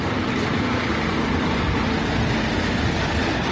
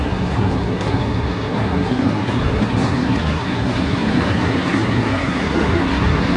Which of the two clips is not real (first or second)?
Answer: second